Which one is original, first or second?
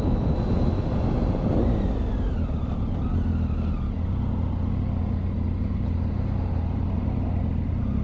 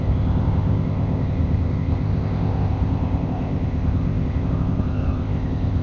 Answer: first